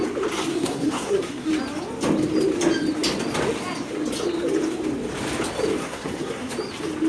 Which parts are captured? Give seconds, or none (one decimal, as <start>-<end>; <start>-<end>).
0.0-0.5; 1.5-5.8; 6.5-7.1